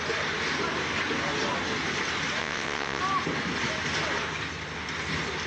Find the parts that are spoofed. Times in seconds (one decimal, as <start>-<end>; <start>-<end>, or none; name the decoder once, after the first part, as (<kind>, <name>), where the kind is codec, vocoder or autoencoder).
2.4-3.0 (vocoder, WaveNeXt)